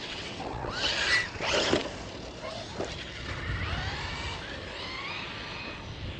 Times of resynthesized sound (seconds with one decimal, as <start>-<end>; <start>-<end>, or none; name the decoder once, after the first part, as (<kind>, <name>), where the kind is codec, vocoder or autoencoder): 0.0-0.7 (vocoder, WaveNeXt)